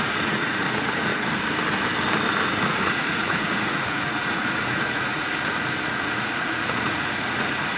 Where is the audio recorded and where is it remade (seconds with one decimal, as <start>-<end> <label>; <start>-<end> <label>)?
0.0-1.1 remade; 1.1-2.6 recorded; 2.6-5.3 remade; 5.3-5.9 recorded; 5.9-7.8 remade